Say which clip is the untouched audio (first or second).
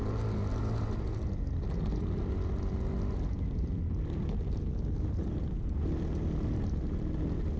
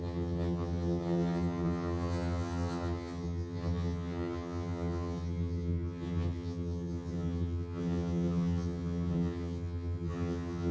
first